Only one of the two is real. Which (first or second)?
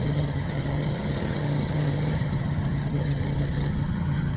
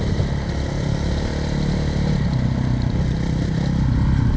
second